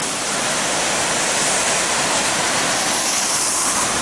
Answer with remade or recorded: recorded